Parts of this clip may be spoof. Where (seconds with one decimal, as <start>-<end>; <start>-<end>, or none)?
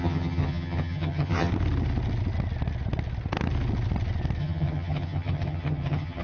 0.0-1.5; 4.4-6.2